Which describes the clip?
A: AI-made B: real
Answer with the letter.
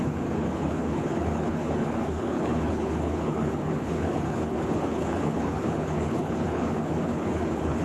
A